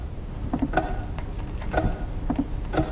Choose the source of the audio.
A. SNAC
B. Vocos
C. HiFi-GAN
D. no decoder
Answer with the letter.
D